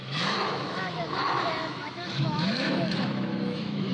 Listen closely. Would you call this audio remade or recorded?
remade